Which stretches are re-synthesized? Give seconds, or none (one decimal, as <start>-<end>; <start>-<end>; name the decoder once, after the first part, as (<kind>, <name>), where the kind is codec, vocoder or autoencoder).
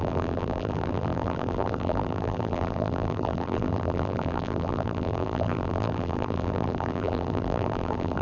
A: 0.0-8.2 (vocoder, BigVGAN v2)